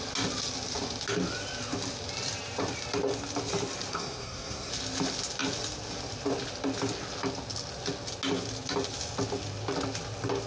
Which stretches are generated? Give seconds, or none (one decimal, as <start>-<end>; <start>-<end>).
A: 3.9-4.7